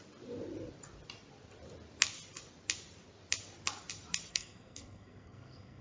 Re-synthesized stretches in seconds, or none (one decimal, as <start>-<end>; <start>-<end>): 4.3-5.8